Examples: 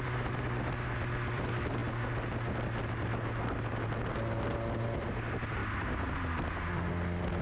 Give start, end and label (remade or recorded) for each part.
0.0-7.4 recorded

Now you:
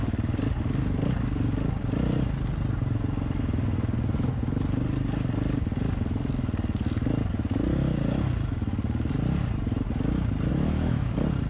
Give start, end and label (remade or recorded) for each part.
0.0-10.5 recorded; 10.5-11.1 remade; 11.1-11.5 recorded

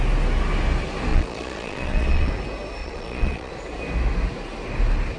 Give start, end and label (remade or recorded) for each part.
0.0-1.1 recorded; 1.1-2.3 remade; 2.3-2.8 recorded; 2.8-3.5 remade; 3.5-5.2 recorded

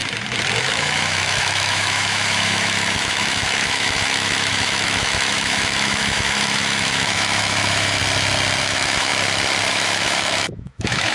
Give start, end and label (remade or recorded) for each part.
0.0-0.6 recorded; 0.6-8.0 remade; 8.0-8.6 recorded; 8.6-9.1 remade; 9.1-9.7 recorded; 9.7-11.1 remade

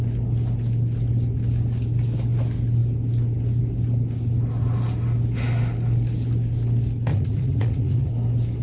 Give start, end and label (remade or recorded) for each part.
0.0-7.1 recorded; 7.1-8.1 remade; 8.1-8.6 recorded